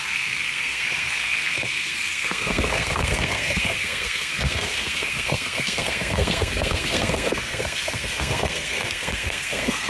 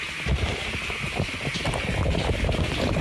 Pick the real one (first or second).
second